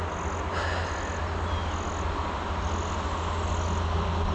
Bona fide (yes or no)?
yes